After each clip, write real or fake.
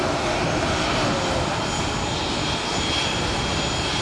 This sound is real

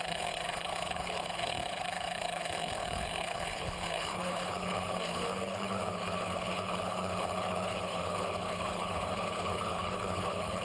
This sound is fake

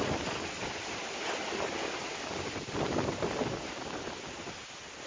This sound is real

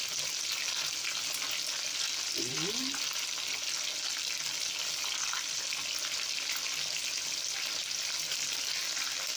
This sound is real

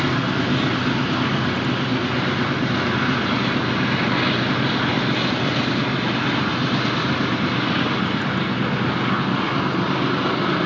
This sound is real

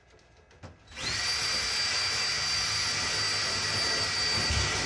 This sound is real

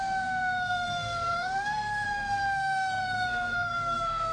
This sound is fake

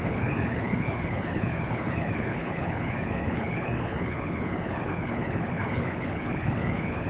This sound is fake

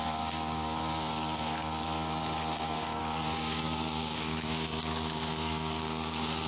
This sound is fake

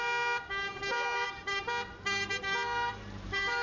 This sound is real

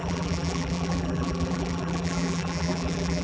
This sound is fake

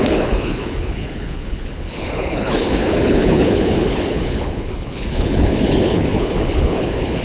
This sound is fake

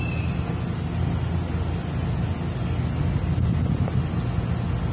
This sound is real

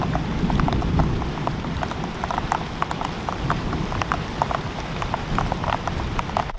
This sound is fake